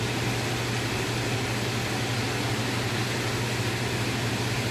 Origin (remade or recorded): recorded